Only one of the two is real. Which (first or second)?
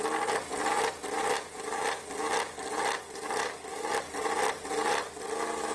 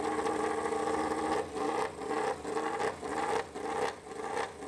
first